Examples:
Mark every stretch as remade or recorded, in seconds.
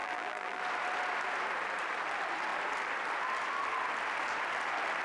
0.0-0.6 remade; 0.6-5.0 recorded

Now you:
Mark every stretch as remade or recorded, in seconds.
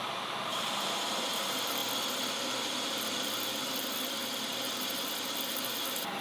0.0-1.8 remade; 1.8-5.5 recorded; 5.5-6.2 remade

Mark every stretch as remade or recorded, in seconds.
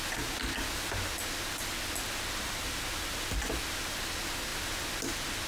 0.0-5.5 recorded